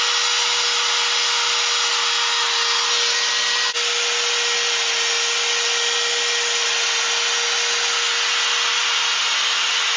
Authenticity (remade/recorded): recorded